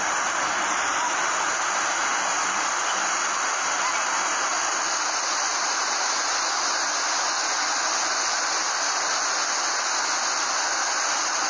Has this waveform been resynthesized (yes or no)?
no